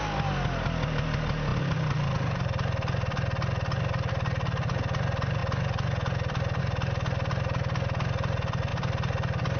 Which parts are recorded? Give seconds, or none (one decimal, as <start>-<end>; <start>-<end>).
0.0-9.6